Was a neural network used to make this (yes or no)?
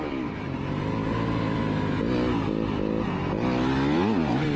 no